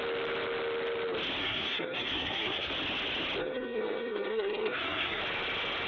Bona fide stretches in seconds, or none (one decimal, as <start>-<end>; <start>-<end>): 0.0-1.4; 2.7-3.4; 5.2-5.9